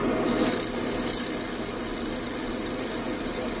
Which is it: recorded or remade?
recorded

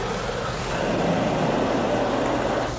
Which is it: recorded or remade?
recorded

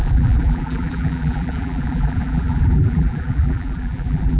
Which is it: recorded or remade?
remade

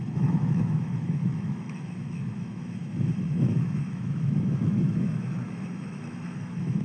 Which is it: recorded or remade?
remade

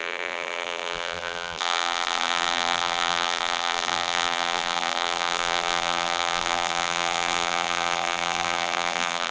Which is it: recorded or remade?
remade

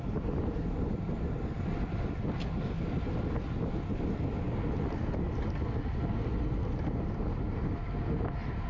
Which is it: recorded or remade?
recorded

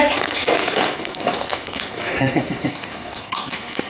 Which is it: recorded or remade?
remade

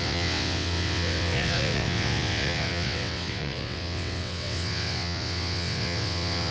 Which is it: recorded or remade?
remade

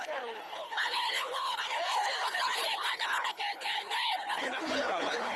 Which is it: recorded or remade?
remade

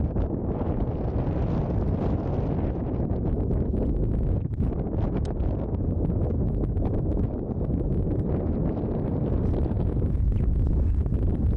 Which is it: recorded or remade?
recorded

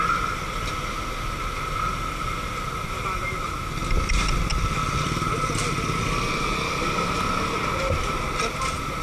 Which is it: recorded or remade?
recorded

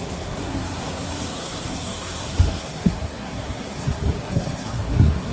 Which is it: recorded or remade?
remade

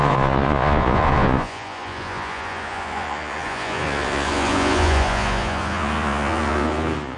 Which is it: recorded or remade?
remade